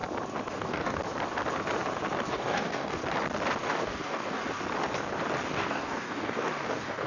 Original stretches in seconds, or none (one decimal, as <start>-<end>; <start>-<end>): 0.0-0.5; 1.0-2.3; 3.0-3.6; 4.4-5.5